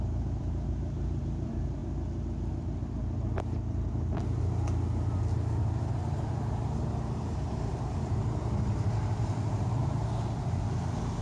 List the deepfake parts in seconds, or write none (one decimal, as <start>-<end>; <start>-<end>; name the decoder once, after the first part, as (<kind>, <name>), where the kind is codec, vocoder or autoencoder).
0.0-1.8 (vocoder, BigVGAN v2); 5.9-9.8